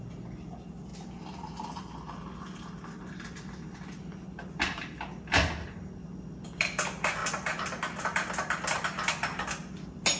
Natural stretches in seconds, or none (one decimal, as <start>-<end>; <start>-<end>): 0.0-10.2